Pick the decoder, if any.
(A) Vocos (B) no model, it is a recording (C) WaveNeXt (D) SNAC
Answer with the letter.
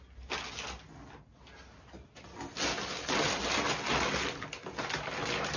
B